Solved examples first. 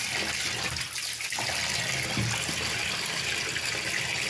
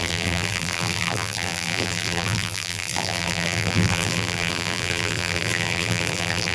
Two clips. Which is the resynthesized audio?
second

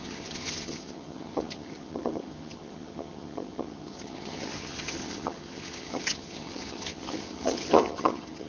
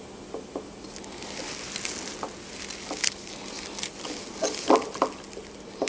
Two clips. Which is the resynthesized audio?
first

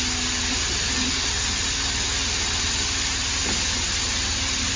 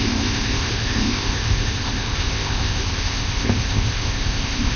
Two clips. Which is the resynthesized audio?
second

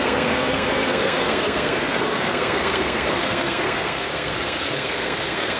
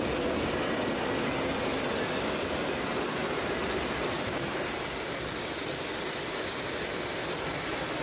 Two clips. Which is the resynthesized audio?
first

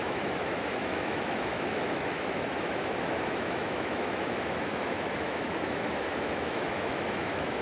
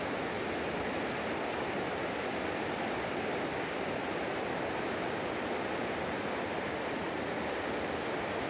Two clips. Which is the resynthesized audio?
first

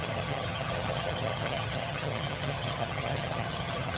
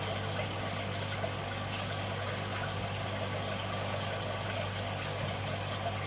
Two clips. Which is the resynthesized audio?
first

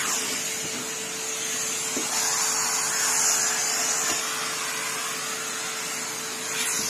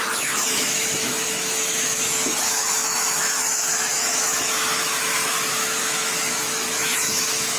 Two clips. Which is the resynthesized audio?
second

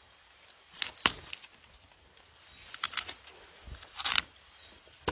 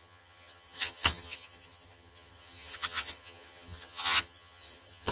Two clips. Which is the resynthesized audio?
second